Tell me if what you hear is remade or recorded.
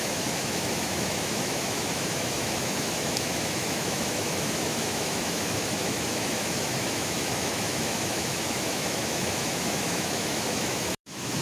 remade